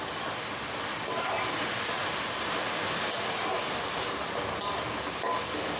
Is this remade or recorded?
recorded